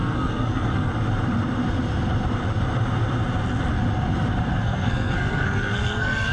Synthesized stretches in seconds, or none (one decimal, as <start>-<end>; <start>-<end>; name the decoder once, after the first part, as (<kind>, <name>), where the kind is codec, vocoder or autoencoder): 0.0-0.9 (codec, SNAC); 4.6-6.3